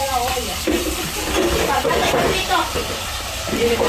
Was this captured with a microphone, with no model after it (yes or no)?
no